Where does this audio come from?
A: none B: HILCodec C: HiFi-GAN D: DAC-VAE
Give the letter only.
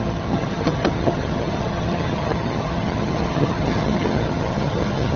C